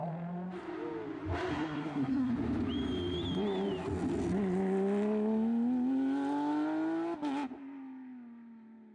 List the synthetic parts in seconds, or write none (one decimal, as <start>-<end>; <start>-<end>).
1.5-2.3